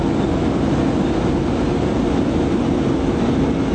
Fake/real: real